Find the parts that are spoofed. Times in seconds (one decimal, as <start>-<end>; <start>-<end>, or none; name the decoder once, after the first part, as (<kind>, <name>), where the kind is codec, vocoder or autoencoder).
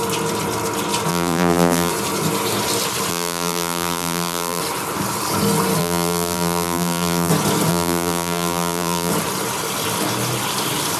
1.1-1.9 (vocoder, BigVGAN v2); 3.1-4.6; 5.8-7.3; 7.7-9.1